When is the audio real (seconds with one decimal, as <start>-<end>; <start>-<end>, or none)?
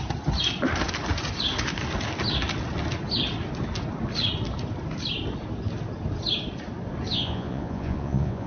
0.0-7.1